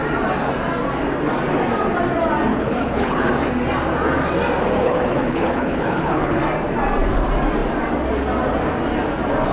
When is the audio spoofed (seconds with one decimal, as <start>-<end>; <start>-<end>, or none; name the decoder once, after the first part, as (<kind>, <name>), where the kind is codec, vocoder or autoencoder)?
2.5-3.3 (codec, HILCodec); 4.8-6.4